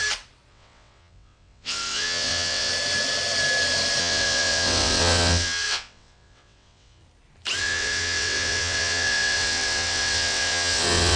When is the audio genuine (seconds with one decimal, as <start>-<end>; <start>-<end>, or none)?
0.0-0.5; 2.7-4.0; 7.0-7.6